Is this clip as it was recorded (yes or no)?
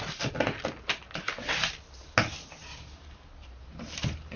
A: yes